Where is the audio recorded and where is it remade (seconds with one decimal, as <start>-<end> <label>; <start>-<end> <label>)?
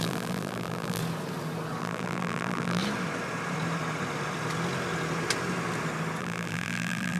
0.0-1.0 remade; 1.0-1.8 recorded; 1.8-2.8 remade; 2.8-6.2 recorded; 6.2-7.2 remade